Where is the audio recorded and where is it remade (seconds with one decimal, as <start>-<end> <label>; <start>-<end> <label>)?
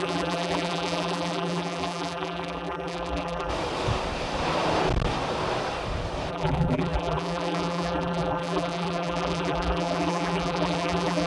0.0-3.5 remade; 3.5-6.3 recorded; 6.3-11.3 remade